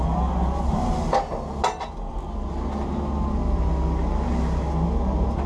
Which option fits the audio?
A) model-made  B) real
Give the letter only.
B